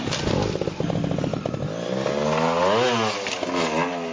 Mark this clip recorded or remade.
recorded